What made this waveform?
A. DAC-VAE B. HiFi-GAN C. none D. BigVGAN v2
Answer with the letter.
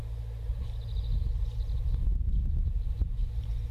C